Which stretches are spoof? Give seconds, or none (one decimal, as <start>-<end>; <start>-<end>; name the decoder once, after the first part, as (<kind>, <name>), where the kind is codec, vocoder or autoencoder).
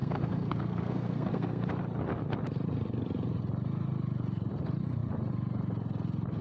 0.0-1.7 (codec, SNAC)